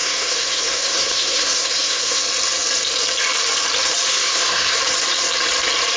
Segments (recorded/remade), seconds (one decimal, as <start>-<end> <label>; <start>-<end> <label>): 0.0-2.2 remade; 2.2-4.1 recorded; 4.1-4.8 remade; 4.8-6.0 recorded